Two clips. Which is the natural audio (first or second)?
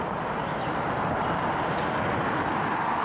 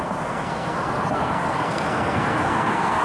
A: first